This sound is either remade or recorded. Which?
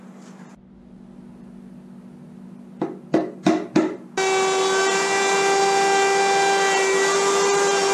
recorded